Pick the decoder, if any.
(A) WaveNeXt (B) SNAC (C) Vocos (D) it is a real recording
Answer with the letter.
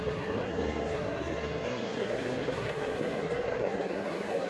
B